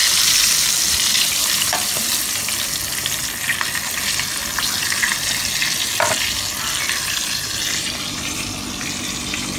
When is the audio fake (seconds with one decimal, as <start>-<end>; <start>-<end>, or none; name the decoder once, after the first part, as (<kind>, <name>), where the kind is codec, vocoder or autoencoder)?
0.9-2.1 (vocoder, BigVGAN v2); 6.6-9.6